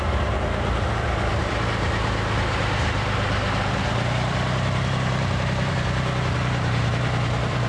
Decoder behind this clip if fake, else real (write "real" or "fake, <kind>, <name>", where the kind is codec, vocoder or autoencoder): fake, vocoder, BigVGAN v2